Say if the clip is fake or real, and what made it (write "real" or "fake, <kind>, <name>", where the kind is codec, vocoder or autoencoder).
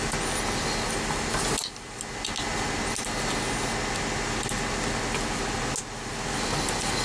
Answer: real